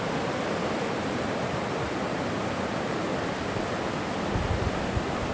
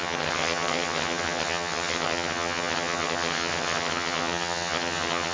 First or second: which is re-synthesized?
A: second